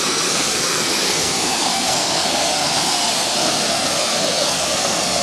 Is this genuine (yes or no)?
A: no